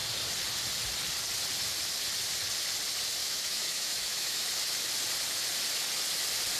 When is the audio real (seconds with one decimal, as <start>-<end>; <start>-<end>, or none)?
0.0-3.2; 4.5-6.6